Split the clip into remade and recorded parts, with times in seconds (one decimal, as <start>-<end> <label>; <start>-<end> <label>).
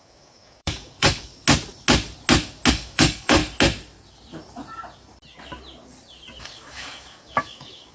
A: 0.0-1.3 remade; 1.3-2.7 recorded; 2.7-3.4 remade; 3.4-6.4 recorded; 6.4-7.9 remade